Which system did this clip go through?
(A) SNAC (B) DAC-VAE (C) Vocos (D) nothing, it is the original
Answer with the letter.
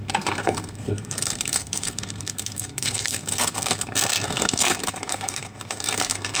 A